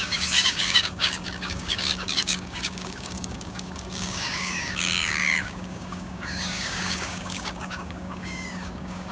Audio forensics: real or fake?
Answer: fake